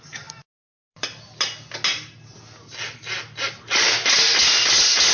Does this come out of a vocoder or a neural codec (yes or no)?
no